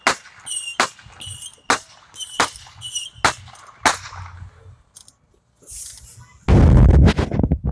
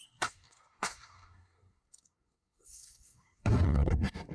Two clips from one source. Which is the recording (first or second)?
first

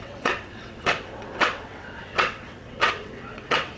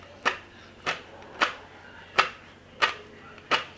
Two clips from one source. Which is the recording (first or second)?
second